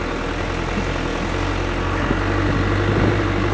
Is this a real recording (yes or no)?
yes